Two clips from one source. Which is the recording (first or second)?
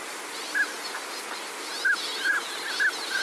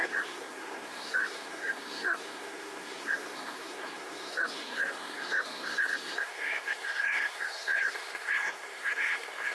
first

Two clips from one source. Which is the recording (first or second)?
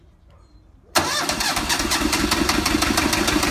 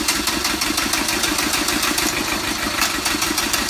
second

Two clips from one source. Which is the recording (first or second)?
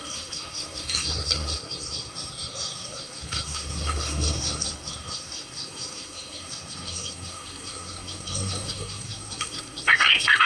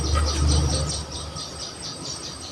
second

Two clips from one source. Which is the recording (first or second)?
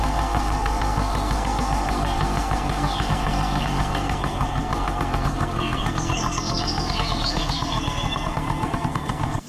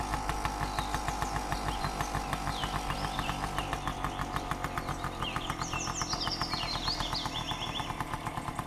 second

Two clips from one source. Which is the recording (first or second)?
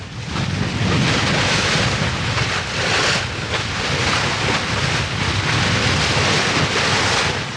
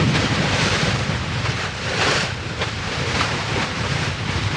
first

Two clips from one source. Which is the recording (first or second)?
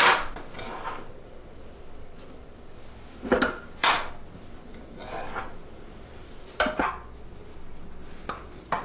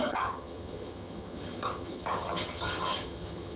first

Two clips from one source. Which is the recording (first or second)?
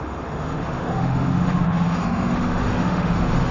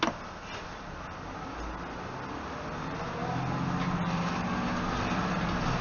second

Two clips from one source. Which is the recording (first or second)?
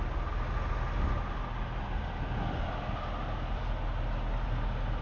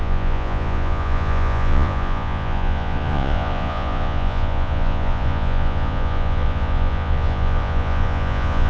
first